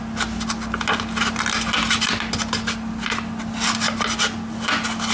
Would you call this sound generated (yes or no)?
no